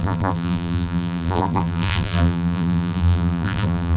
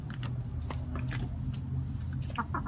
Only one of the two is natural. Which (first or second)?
second